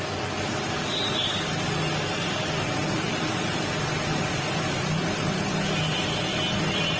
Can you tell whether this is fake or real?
real